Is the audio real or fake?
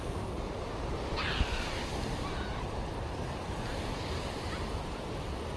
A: real